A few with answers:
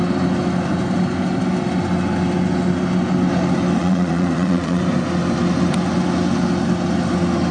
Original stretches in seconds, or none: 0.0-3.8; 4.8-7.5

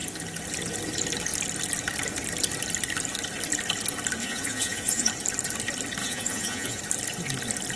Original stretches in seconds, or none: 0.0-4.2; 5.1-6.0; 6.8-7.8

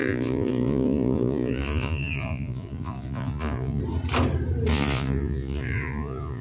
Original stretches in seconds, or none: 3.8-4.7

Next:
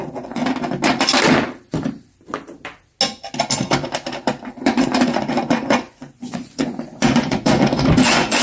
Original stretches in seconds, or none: 0.4-4.5